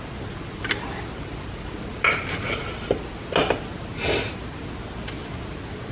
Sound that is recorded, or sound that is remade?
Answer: recorded